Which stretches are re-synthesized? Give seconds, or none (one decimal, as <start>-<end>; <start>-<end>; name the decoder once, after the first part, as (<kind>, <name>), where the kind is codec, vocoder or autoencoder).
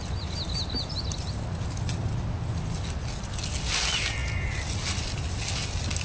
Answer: none